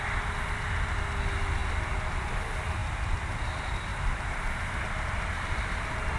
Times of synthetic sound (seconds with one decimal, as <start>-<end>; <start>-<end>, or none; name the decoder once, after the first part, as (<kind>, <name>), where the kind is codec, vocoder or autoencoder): 3.9-4.8 (vocoder, BigVGAN v2)